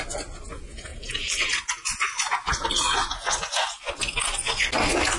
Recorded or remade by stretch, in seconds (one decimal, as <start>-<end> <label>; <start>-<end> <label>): 0.0-0.9 recorded; 0.9-1.5 remade; 1.5-5.2 recorded